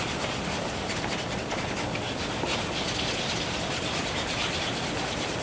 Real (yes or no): yes